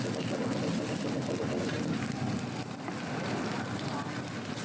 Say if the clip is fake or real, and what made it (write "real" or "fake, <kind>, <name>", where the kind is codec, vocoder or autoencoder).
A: real